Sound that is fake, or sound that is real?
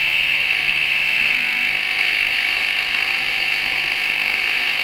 fake